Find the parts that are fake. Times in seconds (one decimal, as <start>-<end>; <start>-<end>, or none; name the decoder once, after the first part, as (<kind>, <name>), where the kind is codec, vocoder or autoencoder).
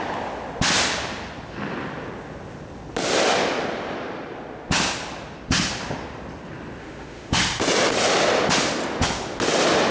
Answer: 6.8-7.4 (autoencoder, DAC-VAE)